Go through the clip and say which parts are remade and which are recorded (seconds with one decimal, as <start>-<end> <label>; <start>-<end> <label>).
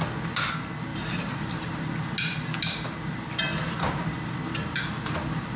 0.0-0.9 recorded; 0.9-4.3 remade; 4.3-5.6 recorded